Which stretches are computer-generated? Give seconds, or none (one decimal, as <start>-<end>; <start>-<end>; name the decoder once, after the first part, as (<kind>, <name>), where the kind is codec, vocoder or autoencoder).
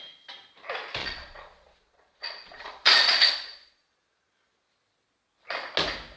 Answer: 1.0-4.7 (vocoder, Vocos)